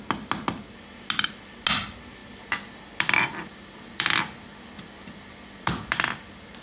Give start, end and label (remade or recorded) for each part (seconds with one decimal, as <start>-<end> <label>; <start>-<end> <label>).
0.0-2.2 recorded; 2.2-6.6 remade